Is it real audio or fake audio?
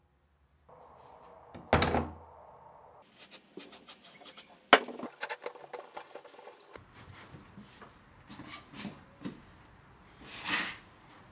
real